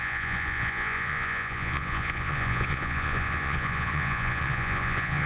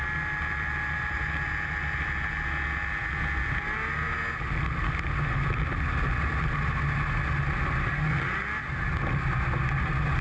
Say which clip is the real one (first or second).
second